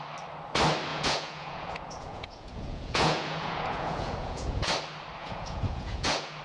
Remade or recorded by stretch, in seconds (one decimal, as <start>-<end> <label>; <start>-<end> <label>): 0.0-0.9 recorded; 0.9-4.7 remade; 4.7-5.2 recorded; 5.2-6.4 remade

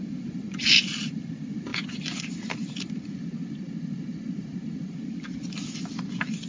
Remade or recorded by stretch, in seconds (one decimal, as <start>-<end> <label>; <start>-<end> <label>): 0.0-6.5 recorded

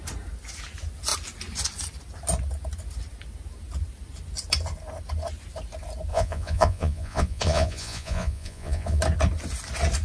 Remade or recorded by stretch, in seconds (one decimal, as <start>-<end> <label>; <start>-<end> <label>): 0.0-6.1 recorded; 6.1-9.0 remade; 9.0-10.0 recorded

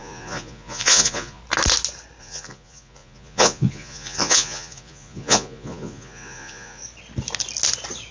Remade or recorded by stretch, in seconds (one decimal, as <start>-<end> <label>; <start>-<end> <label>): 0.0-1.4 remade; 1.4-2.2 recorded; 2.2-6.8 remade; 6.8-8.1 recorded

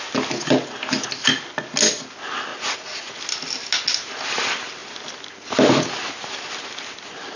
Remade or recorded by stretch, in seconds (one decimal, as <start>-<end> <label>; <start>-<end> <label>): 0.0-2.5 recorded; 2.5-3.2 remade; 3.2-7.4 recorded